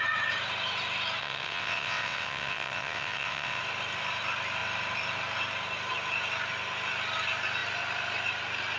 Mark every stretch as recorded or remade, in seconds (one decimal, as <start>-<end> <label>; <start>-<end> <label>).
0.0-1.2 recorded; 1.2-3.6 remade; 3.6-8.8 recorded